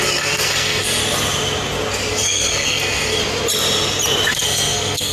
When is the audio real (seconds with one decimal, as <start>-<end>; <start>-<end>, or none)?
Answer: 1.0-2.1; 3.2-4.3